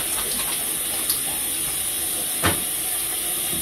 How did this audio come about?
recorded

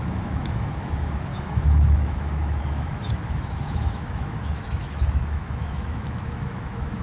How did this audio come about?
remade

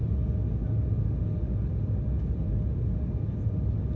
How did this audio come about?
recorded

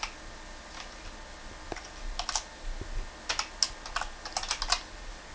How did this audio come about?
recorded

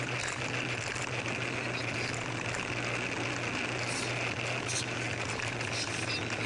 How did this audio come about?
recorded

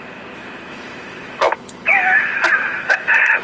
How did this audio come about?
remade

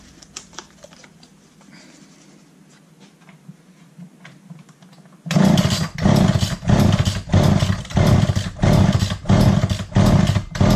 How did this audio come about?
recorded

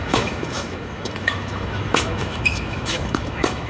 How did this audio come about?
remade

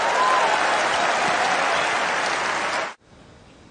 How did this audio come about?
recorded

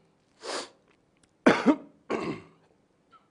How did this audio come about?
recorded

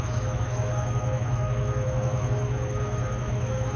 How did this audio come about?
remade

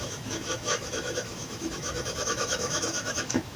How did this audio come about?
remade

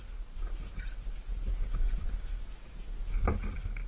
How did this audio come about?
recorded